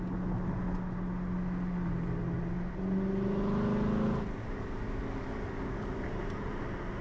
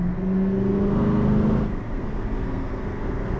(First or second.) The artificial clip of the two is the second